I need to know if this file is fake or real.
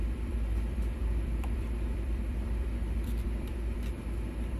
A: fake